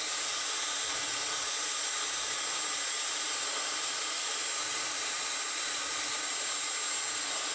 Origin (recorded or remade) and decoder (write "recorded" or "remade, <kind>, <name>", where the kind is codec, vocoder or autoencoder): recorded